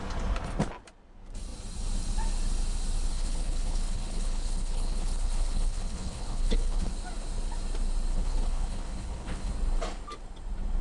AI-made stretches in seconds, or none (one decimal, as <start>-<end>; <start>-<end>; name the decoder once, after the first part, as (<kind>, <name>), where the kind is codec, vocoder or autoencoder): 3.1-6.9 (codec, HILCodec); 8.1-9.5